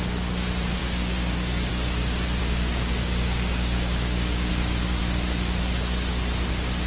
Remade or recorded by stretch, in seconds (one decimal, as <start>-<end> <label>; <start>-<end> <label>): 0.0-0.8 recorded; 0.8-1.7 remade; 1.7-2.4 recorded; 2.4-4.5 remade; 4.5-6.9 recorded